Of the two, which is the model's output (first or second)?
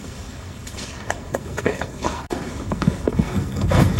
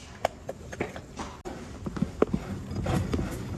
first